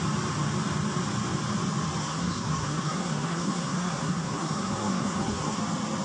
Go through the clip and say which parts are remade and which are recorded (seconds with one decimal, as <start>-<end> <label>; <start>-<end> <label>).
0.0-2.0 recorded; 2.0-5.6 remade; 5.6-6.0 recorded